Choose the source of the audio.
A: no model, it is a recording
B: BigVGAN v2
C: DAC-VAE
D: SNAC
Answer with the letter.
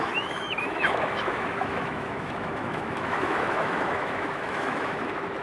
C